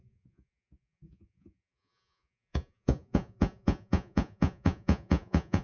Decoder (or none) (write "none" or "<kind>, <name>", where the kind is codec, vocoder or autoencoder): vocoder, Vocos